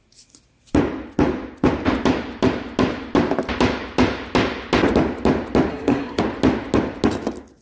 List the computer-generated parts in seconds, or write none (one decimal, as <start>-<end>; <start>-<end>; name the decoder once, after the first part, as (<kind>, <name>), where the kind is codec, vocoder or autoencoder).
5.7-6.2 (codec, SNAC)